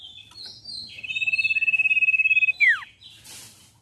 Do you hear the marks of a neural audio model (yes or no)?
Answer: no